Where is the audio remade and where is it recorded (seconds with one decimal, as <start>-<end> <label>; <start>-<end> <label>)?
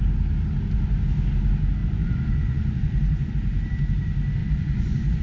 0.0-1.8 recorded; 1.8-3.3 remade; 3.3-4.4 recorded; 4.4-5.2 remade